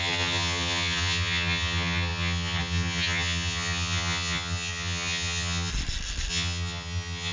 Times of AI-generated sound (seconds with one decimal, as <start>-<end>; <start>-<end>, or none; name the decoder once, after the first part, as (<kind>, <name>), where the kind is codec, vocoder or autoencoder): 0.0-5.7 (vocoder, HiFi-GAN); 6.3-7.3